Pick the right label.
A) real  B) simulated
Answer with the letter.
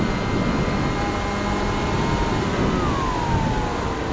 A